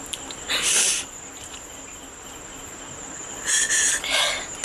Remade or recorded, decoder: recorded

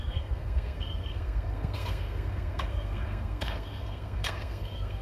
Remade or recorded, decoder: remade, codec, SNAC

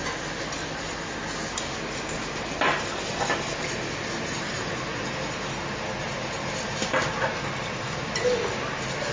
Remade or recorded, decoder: recorded